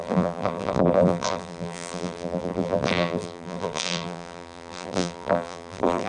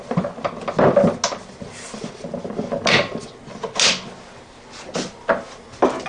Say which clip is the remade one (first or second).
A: first